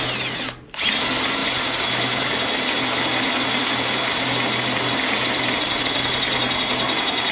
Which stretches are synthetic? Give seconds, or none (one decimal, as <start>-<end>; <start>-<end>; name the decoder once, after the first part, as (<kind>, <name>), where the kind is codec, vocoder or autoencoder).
none